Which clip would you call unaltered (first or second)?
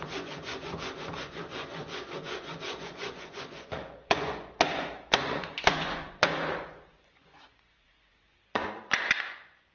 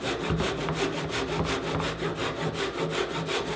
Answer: second